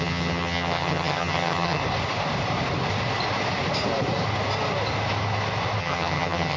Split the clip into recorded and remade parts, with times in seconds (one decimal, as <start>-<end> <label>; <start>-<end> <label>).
0.0-1.8 remade; 1.8-5.8 recorded; 5.8-6.6 remade